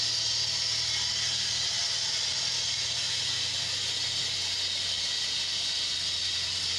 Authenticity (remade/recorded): recorded